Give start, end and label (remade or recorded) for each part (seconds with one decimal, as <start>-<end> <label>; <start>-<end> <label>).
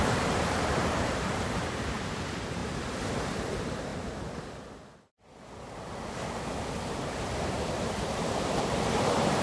0.0-2.6 remade; 2.6-3.1 recorded; 3.1-3.9 remade; 3.9-7.8 recorded; 7.8-9.4 remade